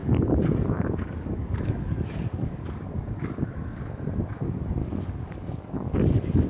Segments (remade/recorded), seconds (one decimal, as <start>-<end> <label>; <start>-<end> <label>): 0.0-3.8 remade; 3.8-4.8 recorded; 4.8-6.5 remade